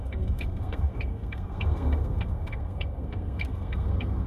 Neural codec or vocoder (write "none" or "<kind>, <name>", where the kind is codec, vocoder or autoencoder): codec, SNAC